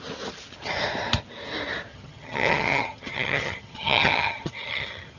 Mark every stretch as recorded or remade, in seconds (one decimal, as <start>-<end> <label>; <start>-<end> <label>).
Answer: 0.0-1.9 recorded; 1.9-5.2 remade